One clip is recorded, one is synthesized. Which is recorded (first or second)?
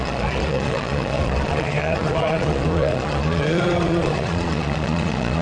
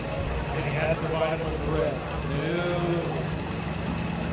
second